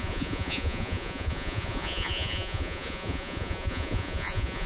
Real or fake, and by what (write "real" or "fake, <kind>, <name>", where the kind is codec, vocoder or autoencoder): fake, vocoder, Vocos